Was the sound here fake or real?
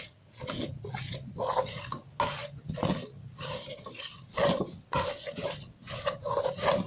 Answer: real